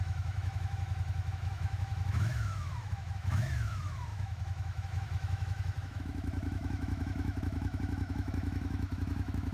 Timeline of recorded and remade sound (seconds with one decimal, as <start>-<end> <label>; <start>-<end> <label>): 0.0-9.5 remade